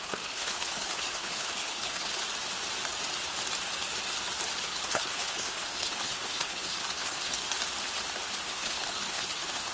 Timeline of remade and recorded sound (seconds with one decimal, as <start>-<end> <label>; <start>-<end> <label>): 0.0-2.1 remade; 2.1-4.6 recorded; 4.6-7.4 remade; 7.4-8.4 recorded; 8.4-9.7 remade